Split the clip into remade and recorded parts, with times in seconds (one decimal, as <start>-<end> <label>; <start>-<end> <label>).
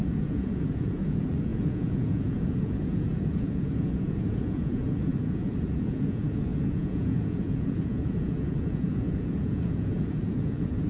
0.0-10.9 remade